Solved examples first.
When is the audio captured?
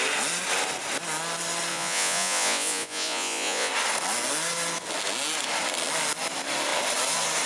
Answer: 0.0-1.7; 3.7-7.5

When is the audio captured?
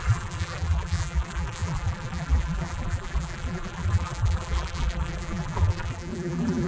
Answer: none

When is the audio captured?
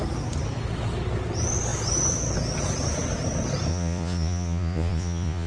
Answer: 0.0-3.7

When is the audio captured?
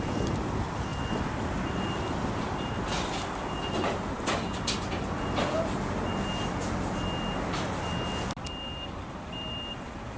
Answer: 0.0-10.2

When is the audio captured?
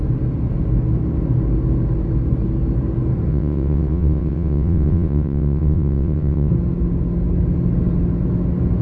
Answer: 0.0-3.3; 6.5-8.8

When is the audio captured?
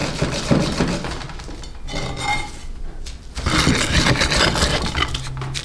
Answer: 0.0-5.6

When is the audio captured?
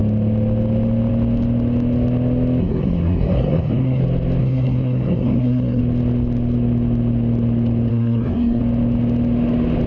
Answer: 0.0-2.6; 4.0-4.4; 5.8-7.9; 8.6-9.9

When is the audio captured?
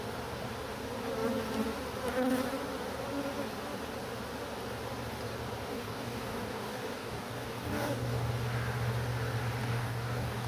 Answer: 0.0-5.7; 8.3-9.6